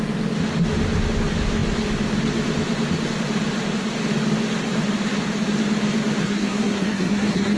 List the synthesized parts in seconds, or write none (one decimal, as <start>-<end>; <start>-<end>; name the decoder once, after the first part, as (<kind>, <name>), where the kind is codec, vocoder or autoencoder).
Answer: 6.2-7.6 (codec, SNAC)